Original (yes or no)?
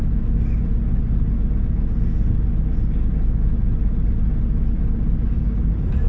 yes